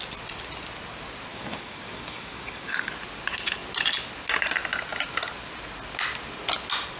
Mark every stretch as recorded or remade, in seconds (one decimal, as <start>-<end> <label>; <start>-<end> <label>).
0.0-1.3 recorded; 1.3-2.9 remade; 2.9-7.0 recorded